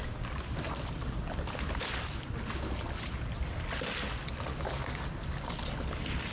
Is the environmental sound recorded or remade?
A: recorded